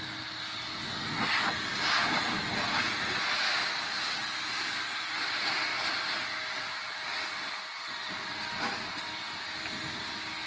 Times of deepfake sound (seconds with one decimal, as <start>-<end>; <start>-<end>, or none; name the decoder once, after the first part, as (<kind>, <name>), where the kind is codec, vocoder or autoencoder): none